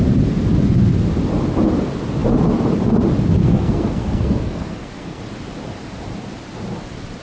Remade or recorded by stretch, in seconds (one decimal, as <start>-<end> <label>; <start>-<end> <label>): 0.0-3.4 recorded; 3.4-5.2 remade; 5.2-7.2 recorded